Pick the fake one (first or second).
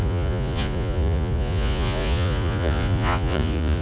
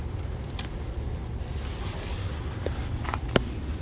first